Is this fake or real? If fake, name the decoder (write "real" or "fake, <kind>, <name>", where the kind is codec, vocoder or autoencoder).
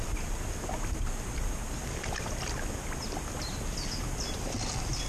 real